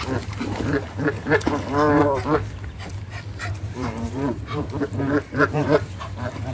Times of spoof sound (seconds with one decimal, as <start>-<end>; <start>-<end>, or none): 3.5-6.5